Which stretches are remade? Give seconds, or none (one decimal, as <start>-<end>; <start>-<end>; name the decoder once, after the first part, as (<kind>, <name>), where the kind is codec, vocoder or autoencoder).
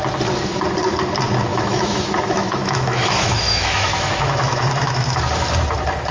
1.5-5.2 (autoencoder, DAC-VAE)